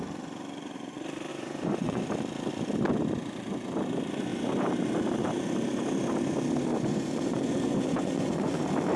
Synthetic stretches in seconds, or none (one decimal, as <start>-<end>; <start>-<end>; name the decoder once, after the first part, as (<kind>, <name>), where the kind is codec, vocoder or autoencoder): 1.3-2.0 (vocoder, Vocos); 6.7-8.6

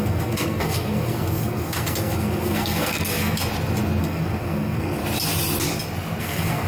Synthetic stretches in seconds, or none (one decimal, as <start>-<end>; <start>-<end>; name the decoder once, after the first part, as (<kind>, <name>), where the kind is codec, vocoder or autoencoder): 0.0-3.4 (codec, SNAC); 4.0-5.0; 6.2-6.7

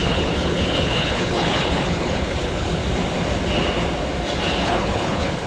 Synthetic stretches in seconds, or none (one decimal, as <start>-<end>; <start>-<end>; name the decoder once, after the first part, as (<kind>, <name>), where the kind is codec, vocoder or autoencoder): 0.0-2.8 (codec, HILCodec); 4.5-5.5

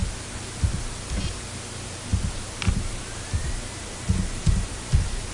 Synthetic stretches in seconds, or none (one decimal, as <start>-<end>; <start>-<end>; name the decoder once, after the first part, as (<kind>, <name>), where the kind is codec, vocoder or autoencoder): none